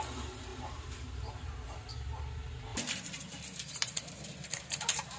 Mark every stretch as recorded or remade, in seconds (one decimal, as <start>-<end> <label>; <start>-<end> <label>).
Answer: 0.0-0.5 recorded; 0.5-1.9 remade; 1.9-2.7 recorded; 2.7-5.2 remade